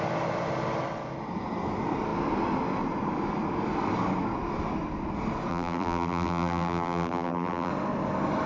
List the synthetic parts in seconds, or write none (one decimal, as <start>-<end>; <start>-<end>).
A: 5.5-7.7